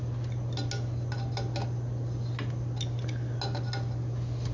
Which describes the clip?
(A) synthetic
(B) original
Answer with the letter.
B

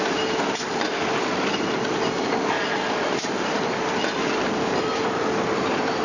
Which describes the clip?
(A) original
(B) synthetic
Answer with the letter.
B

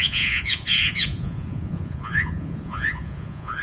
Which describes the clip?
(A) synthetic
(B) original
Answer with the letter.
A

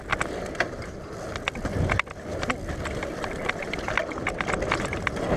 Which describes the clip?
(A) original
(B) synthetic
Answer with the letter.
A